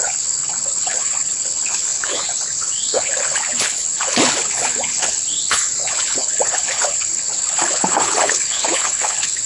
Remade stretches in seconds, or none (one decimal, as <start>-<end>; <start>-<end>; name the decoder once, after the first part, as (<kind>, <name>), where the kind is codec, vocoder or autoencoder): 0.0-9.5 (codec, HILCodec)

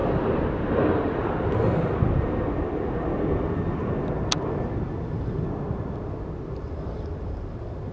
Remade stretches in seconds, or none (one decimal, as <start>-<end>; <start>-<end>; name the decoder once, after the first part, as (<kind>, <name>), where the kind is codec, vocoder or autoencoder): none

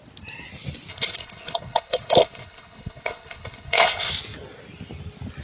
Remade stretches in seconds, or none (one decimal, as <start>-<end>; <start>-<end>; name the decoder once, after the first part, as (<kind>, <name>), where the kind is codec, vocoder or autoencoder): 0.9-4.1 (codec, HILCodec)

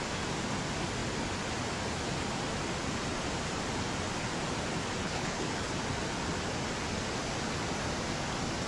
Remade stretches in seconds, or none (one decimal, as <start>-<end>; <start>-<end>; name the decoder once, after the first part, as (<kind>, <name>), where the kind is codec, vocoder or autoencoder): 5.0-5.7 (codec, HILCodec)

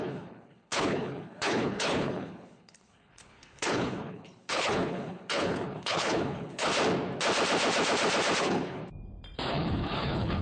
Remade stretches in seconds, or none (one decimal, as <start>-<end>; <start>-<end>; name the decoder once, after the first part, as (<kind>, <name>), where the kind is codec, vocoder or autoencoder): 0.0-6.7 (codec, HILCodec); 8.4-8.8; 9.5-10.4

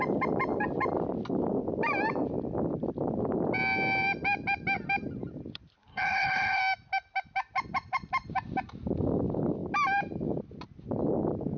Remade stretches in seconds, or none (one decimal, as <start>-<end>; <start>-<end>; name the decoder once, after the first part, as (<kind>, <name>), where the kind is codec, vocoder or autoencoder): 5.9-6.6 (codec, HILCodec)